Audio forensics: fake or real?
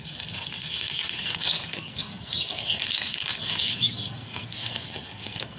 fake